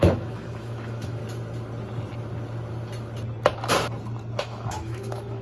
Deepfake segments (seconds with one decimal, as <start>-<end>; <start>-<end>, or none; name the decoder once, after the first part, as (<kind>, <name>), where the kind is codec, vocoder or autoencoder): 0.0-1.2 (autoencoder, DAC-VAE); 4.4-5.4